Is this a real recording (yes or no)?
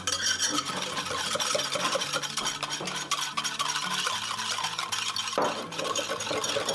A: yes